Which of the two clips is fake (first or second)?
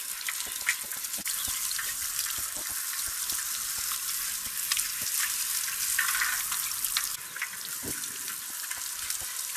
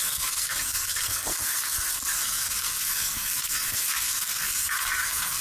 second